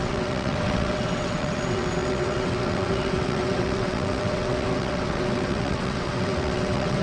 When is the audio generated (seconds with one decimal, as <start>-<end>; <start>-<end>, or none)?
0.0-7.0